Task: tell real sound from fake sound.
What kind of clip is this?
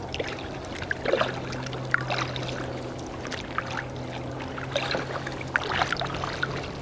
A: real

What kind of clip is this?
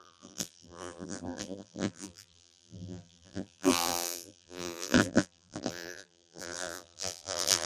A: fake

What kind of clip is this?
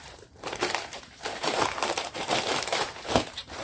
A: fake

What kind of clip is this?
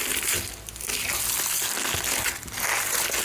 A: real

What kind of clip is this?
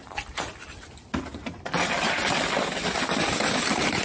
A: real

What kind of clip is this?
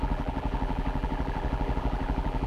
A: fake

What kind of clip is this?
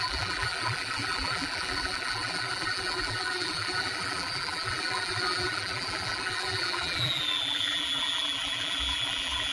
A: fake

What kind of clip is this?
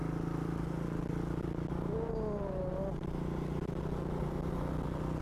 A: real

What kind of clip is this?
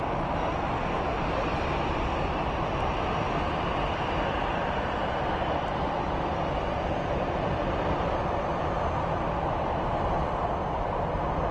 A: real